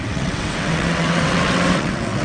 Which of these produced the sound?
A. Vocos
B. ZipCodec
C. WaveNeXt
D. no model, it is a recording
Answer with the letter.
C